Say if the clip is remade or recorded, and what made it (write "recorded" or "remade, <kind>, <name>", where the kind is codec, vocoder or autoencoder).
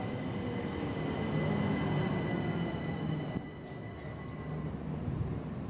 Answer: recorded